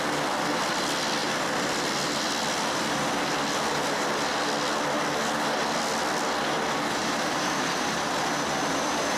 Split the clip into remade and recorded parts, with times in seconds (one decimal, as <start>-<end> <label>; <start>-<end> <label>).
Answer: 0.0-7.0 recorded; 7.0-8.1 remade; 8.1-9.2 recorded